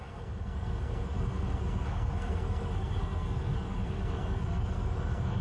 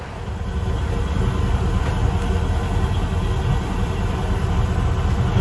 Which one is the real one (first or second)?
second